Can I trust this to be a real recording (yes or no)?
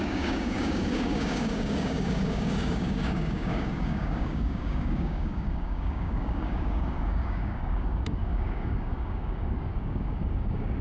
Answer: no